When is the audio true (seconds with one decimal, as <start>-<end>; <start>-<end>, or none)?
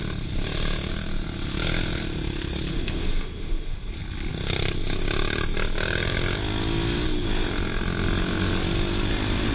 0.0-2.7; 3.9-9.5